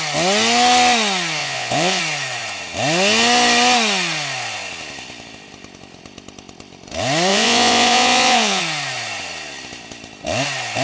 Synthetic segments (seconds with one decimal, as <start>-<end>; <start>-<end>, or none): 1.4-2.0; 7.3-8.6